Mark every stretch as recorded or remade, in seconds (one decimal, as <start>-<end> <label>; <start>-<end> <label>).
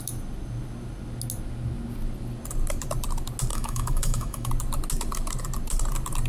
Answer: 0.0-3.5 recorded; 3.5-4.5 remade; 4.5-6.3 recorded